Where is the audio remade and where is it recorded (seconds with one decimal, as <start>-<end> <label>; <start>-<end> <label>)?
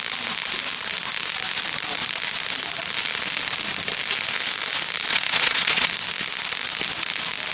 0.0-5.1 recorded; 5.1-5.9 remade; 5.9-7.5 recorded